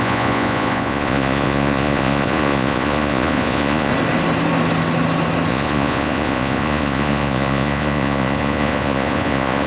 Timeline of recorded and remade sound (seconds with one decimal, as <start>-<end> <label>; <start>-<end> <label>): 0.0-3.9 remade; 3.9-5.5 recorded; 5.5-9.7 remade